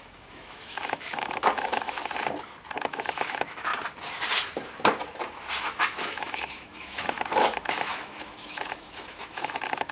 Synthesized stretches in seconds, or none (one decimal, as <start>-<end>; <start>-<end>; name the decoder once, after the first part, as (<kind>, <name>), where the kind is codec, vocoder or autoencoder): 0.0-2.0 (autoencoder, DAC-VAE); 2.8-3.7; 5.6-9.9